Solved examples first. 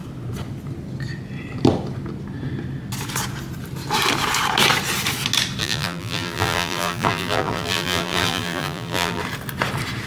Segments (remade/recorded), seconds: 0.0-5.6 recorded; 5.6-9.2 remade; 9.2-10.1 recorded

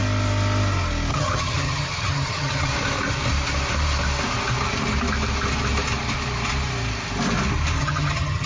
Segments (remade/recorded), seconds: 0.0-1.1 recorded; 1.1-2.7 remade; 2.7-7.8 recorded; 7.8-8.5 remade